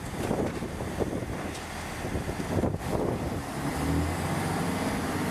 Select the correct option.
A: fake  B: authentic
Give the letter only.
B